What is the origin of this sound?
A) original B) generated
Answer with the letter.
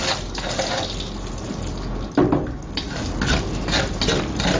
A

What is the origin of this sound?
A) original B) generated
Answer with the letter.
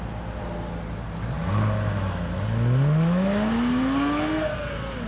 A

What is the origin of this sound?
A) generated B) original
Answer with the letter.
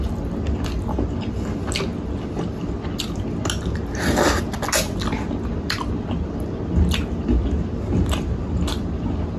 B